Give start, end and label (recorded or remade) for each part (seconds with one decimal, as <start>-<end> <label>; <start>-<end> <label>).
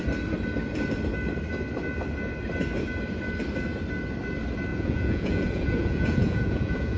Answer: 0.0-4.7 recorded; 4.7-7.0 remade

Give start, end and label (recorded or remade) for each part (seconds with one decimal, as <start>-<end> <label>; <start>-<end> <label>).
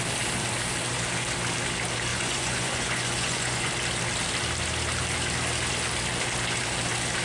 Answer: 0.0-2.1 recorded; 2.1-3.7 remade; 3.7-7.2 recorded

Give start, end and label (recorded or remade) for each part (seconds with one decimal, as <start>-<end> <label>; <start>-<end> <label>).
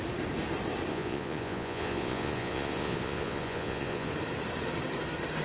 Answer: 0.0-0.9 recorded; 0.9-4.1 remade; 4.1-5.4 recorded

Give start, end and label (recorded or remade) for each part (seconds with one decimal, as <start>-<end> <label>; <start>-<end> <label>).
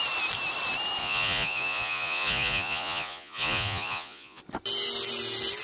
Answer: 0.0-1.0 recorded; 1.0-4.4 remade; 4.4-5.6 recorded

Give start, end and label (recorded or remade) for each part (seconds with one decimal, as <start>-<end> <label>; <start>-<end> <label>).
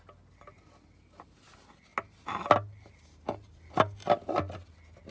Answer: 0.0-5.1 recorded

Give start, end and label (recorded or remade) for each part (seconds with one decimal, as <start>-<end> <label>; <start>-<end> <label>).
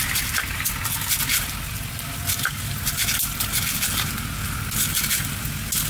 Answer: 0.0-5.9 recorded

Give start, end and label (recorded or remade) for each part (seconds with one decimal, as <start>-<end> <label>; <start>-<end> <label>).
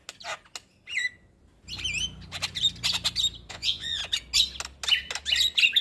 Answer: 0.0-3.5 recorded; 3.5-4.0 remade; 4.0-5.8 recorded